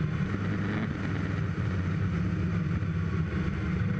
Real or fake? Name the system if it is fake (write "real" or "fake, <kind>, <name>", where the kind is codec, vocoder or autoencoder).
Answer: real